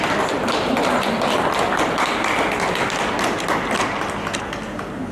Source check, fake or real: real